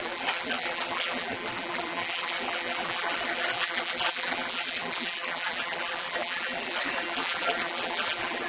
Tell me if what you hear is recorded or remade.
remade